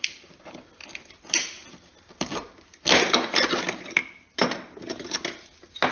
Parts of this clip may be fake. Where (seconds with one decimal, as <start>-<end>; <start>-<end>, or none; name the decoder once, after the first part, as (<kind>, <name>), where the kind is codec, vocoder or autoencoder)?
1.9-2.6 (vocoder, BigVGAN v2)